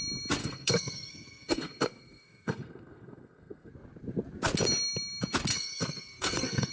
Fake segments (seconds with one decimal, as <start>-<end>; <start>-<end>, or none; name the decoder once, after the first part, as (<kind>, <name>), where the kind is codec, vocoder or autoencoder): 0.4-3.7 (codec, SNAC); 5.5-6.7